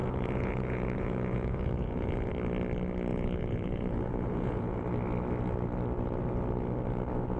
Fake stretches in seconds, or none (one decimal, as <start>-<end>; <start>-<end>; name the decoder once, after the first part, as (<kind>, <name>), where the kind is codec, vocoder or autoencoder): 0.0-2.3 (vocoder, Vocos); 3.1-4.8